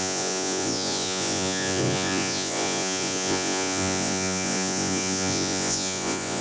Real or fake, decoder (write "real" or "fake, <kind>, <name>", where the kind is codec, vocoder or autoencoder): fake, vocoder, Vocos